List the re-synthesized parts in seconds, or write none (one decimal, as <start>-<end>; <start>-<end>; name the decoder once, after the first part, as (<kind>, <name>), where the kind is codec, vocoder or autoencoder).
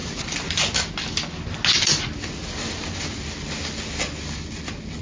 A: none